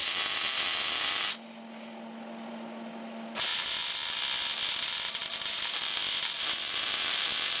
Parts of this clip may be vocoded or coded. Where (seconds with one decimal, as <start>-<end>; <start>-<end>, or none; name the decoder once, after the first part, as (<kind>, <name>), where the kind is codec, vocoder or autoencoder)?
none